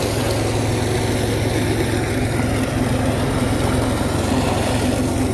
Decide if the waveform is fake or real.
real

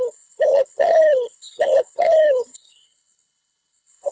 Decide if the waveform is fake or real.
fake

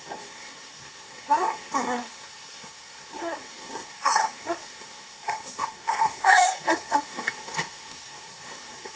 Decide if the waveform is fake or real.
fake